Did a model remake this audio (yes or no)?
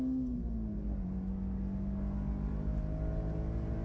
no